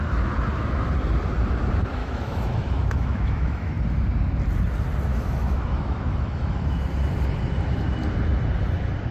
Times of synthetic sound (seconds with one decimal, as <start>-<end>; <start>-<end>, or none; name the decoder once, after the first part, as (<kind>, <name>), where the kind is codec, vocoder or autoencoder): 2.0-3.7 (autoencoder, DAC-VAE); 5.1-6.8